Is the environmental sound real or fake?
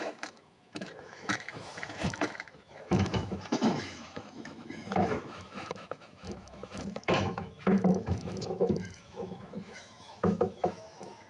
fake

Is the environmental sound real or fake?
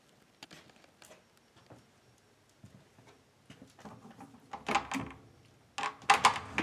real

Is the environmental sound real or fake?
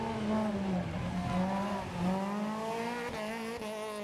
real